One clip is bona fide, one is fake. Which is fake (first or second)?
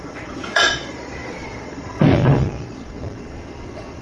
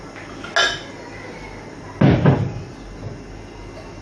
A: first